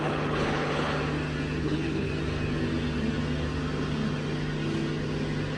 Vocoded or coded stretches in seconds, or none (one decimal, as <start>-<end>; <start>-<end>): 0.0-1.0; 1.6-2.1

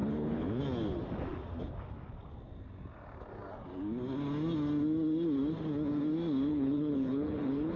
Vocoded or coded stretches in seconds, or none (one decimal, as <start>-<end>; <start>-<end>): 0.0-0.6; 6.5-7.8

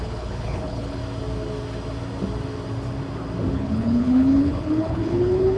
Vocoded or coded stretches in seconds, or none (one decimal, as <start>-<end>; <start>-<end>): 0.0-1.0; 3.5-5.6